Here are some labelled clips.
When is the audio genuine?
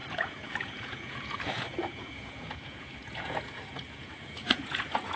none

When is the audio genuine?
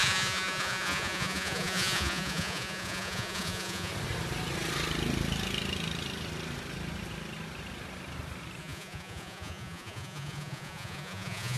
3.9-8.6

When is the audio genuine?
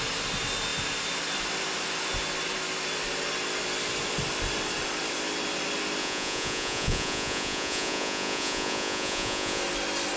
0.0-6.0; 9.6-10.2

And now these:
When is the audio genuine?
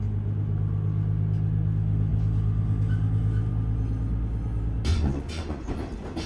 0.0-4.9; 5.8-6.3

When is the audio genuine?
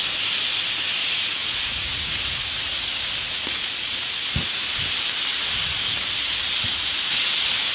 0.0-1.0; 4.7-6.2; 7.3-7.7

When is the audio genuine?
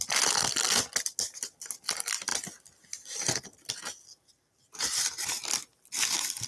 0.0-6.5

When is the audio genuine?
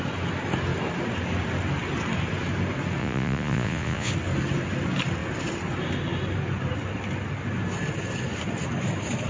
0.0-3.0; 4.1-9.3